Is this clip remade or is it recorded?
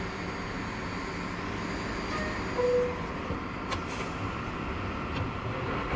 recorded